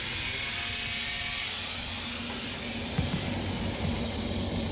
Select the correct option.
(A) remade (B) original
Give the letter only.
B